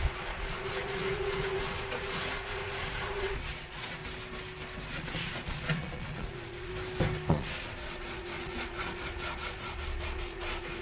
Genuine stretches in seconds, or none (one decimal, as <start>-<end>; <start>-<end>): 4.0-4.9; 6.7-7.3